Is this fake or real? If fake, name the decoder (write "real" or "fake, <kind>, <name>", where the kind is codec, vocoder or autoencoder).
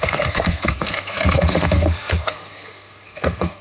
fake, codec, SNAC